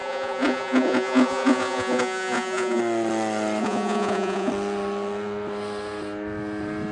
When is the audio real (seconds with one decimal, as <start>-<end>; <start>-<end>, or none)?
2.8-3.6; 4.5-6.9